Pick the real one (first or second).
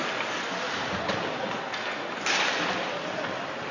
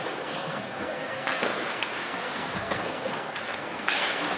first